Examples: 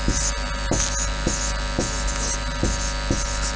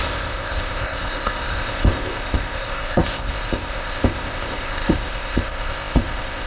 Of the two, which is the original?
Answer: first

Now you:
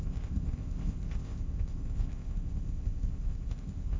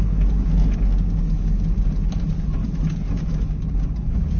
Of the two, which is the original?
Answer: second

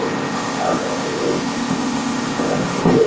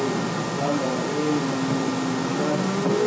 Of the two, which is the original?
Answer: second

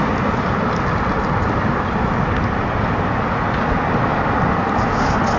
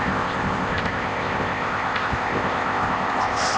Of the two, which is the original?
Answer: first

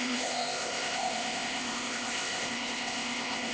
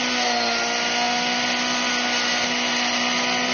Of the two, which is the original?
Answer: second